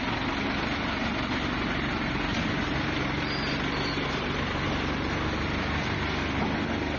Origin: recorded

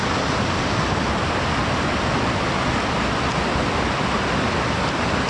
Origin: recorded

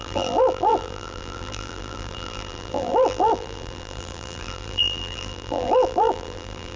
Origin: remade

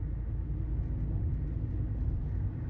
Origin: recorded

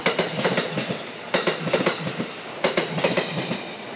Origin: recorded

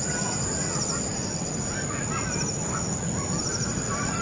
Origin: recorded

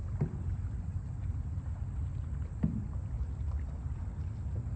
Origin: recorded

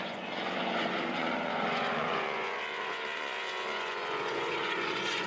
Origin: remade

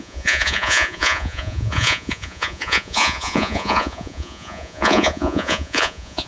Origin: remade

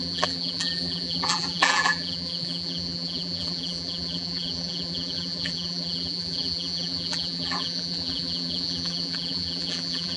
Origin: remade